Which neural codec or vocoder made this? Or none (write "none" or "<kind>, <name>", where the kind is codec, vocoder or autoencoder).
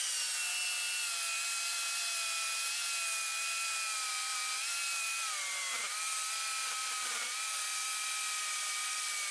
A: none